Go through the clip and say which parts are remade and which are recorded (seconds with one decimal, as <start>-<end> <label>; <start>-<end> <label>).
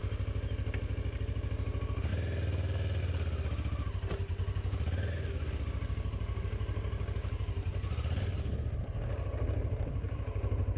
0.0-10.8 recorded